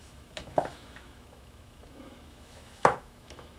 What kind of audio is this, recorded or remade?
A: remade